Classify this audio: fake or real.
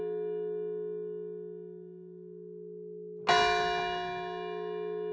real